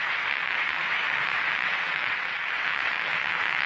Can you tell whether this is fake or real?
fake